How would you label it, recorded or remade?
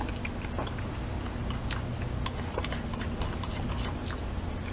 recorded